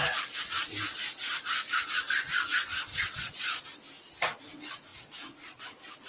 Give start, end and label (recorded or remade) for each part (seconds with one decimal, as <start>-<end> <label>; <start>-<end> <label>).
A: 0.0-2.9 recorded; 2.9-3.6 remade; 3.6-4.9 recorded; 4.9-5.6 remade; 5.6-6.1 recorded